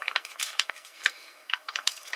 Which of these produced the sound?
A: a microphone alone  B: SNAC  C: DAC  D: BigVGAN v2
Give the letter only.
B